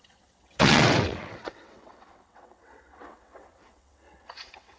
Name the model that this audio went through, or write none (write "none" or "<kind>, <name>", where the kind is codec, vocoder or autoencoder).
vocoder, WaveNeXt